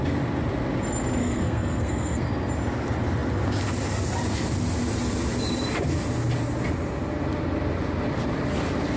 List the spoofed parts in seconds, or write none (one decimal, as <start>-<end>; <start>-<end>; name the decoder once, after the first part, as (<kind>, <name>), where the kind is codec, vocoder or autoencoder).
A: 1.2-2.3 (codec, SNAC)